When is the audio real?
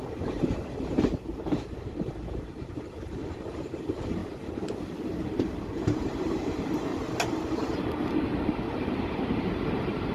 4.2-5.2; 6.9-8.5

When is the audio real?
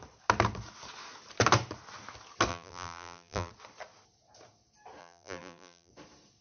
0.0-2.5; 3.5-5.0; 5.9-6.4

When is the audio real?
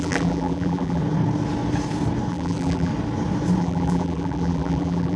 1.0-2.3; 2.9-3.6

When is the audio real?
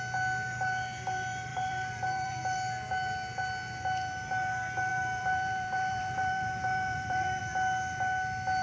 0.0-1.5; 2.4-4.9; 7.4-8.6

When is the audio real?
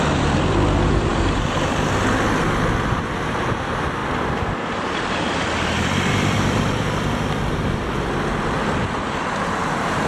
4.0-5.8